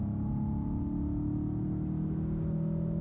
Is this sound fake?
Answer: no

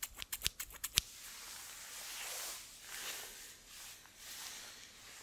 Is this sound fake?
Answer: no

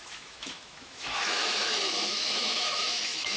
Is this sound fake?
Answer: yes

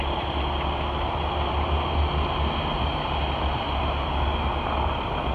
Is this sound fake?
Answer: no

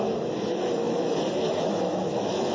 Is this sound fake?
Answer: yes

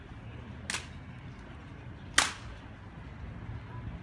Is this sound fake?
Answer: no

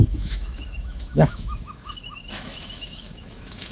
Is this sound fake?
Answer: yes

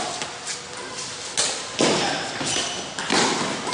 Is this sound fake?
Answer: no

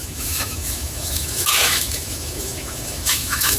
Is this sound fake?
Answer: yes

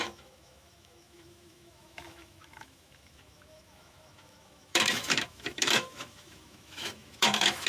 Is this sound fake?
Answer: yes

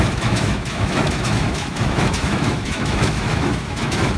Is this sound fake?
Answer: yes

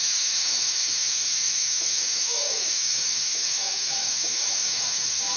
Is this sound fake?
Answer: yes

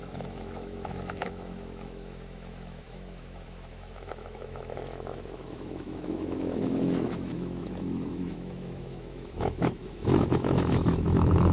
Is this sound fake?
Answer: yes